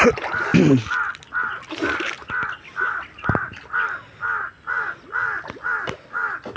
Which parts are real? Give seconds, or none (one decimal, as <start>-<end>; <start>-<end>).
0.0-6.6